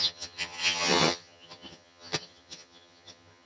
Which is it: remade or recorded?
remade